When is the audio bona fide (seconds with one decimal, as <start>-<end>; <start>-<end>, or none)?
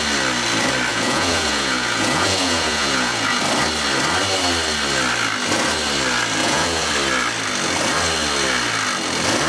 0.0-0.9; 3.4-6.4; 6.9-9.5